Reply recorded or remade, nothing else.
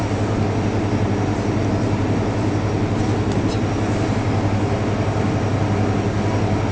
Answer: recorded